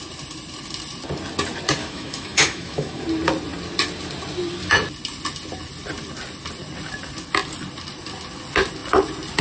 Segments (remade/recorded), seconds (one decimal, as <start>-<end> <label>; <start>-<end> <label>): 0.0-1.8 recorded; 1.8-3.0 remade; 3.0-9.4 recorded